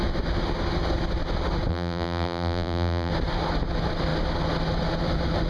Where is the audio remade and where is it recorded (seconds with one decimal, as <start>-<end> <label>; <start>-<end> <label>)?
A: 0.0-1.7 recorded; 1.7-3.1 remade; 3.1-5.5 recorded

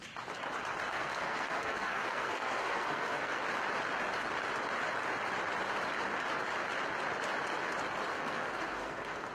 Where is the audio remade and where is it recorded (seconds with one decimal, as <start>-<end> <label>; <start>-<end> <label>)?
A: 0.0-0.9 recorded; 0.9-3.4 remade; 3.4-8.1 recorded; 8.1-9.3 remade

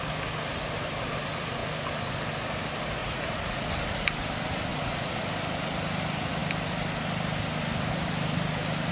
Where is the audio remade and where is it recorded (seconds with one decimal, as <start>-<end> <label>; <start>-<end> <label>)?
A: 0.0-3.0 recorded; 3.0-3.7 remade; 3.7-4.7 recorded; 4.7-5.2 remade; 5.2-8.9 recorded

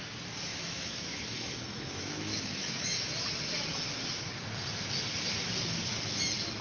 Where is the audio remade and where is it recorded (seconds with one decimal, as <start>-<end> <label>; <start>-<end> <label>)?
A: 0.0-0.5 recorded; 0.5-3.1 remade; 3.1-6.6 recorded

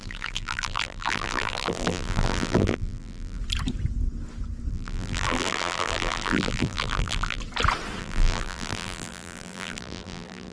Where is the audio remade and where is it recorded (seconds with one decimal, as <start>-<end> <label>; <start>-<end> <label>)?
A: 0.0-3.4 remade; 3.4-4.7 recorded; 4.7-7.4 remade; 7.4-8.0 recorded; 8.0-10.5 remade

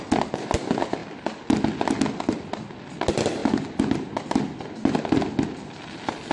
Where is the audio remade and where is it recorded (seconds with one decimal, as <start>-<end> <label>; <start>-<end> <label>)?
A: 0.0-6.3 recorded

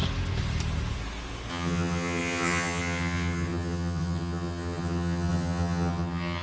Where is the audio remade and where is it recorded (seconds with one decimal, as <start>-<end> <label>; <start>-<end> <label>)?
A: 0.0-1.5 recorded; 1.5-6.4 remade

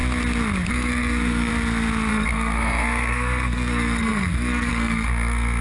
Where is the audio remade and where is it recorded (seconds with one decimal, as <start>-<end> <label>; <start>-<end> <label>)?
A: 0.0-0.7 recorded; 0.7-1.5 remade; 1.5-2.1 recorded; 2.1-5.6 remade